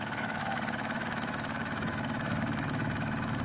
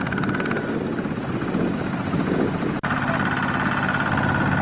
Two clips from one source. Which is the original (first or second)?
second